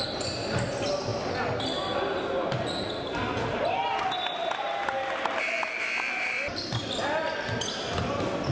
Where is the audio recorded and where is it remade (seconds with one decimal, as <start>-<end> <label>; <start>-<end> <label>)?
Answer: 0.0-8.5 recorded